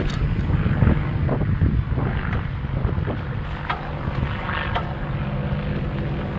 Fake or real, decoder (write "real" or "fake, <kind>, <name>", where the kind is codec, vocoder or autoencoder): real